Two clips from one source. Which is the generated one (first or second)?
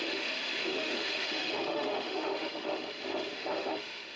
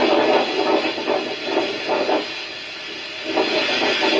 first